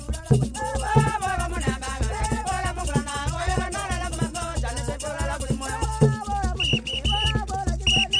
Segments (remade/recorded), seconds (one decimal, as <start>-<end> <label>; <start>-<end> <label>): 0.0-4.5 remade; 4.5-8.2 recorded